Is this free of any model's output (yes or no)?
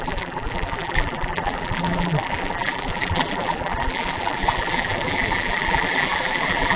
no